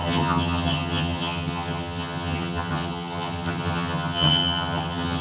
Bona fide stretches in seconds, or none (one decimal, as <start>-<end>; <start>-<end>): none